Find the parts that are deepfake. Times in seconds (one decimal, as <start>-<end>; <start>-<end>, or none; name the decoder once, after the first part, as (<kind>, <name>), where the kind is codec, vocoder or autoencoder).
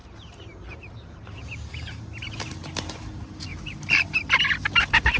0.0-2.0 (vocoder, BigVGAN v2); 3.5-4.4